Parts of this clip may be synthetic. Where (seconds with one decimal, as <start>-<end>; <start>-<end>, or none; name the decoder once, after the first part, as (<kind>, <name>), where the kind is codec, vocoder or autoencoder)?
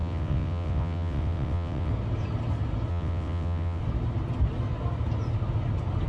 0.0-1.9 (vocoder, WaveNeXt); 2.9-3.8